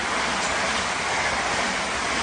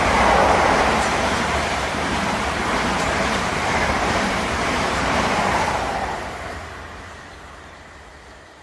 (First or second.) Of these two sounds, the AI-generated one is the second